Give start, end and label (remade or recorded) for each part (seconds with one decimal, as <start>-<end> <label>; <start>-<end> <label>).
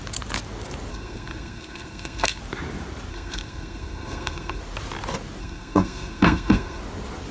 0.0-0.9 recorded; 0.9-2.4 remade; 2.4-3.1 recorded; 3.1-4.6 remade; 4.6-5.4 recorded; 5.4-6.8 remade; 6.8-7.3 recorded